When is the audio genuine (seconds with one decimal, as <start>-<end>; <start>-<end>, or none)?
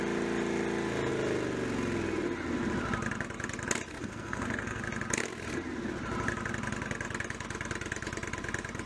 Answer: 0.0-4.0; 4.8-8.9